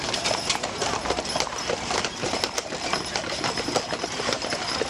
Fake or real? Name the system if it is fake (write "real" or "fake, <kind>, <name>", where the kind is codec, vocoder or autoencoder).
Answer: fake, vocoder, BigVGAN v2